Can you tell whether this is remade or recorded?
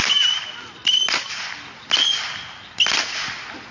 recorded